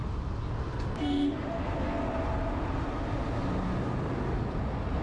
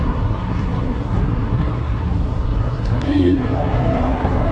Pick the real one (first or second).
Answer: first